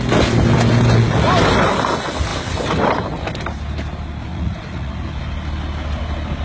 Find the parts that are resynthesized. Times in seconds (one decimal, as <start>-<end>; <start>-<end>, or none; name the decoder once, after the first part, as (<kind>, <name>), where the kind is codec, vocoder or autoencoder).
4.3-4.9 (vocoder, Vocos)